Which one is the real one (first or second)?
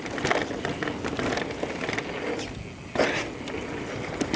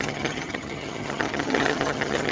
first